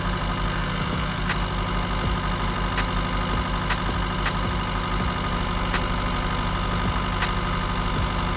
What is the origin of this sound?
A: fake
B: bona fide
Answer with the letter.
B